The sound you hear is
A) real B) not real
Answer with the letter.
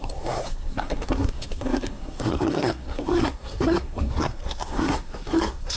B